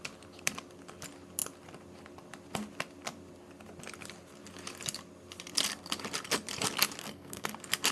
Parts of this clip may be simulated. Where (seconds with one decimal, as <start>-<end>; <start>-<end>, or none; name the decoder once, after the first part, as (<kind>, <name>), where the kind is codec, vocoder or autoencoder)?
7.0-7.5 (codec, SNAC)